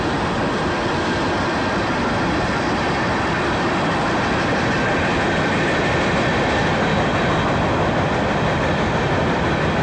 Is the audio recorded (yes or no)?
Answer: yes